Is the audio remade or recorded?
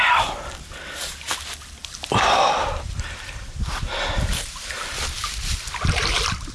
recorded